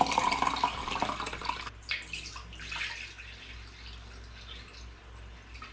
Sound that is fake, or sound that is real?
real